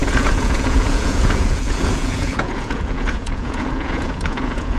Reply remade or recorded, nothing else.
remade